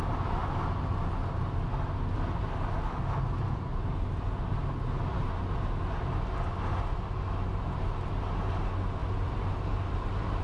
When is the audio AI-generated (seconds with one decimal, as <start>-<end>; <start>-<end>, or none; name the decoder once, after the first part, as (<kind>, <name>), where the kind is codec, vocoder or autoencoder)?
3.7-4.8 (vocoder, BigVGAN v2); 9.0-10.4